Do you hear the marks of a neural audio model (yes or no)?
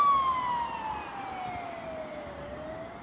no